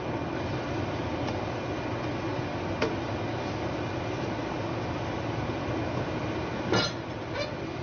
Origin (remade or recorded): recorded